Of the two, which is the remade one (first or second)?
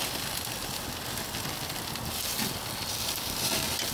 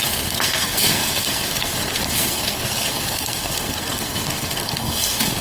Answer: second